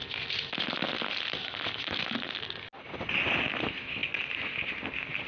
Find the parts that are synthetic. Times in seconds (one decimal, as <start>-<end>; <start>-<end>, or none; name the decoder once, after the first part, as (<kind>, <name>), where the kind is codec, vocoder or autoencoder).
none

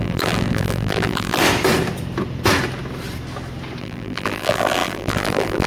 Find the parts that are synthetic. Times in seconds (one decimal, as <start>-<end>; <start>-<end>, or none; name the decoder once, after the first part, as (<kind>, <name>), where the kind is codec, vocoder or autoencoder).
0.0-1.4 (vocoder, BigVGAN v2); 3.8-5.7

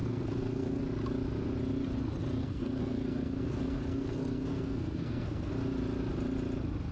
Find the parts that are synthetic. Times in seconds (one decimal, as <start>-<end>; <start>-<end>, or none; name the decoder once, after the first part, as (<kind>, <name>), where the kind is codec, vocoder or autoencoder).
0.0-0.8 (codec, SNAC); 2.4-5.5

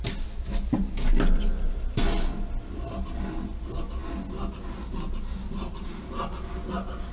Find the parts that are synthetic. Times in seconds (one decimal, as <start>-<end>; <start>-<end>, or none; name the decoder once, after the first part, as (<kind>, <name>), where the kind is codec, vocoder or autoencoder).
none